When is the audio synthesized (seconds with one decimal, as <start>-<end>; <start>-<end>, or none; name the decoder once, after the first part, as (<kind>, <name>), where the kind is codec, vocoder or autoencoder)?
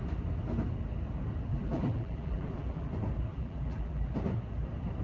1.5-2.9 (vocoder, BigVGAN v2); 3.3-4.1